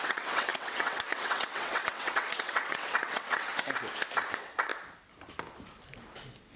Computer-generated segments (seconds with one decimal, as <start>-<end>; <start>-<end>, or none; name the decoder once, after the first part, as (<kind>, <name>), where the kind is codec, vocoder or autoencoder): 0.0-3.5 (vocoder, WaveNeXt); 4.3-4.7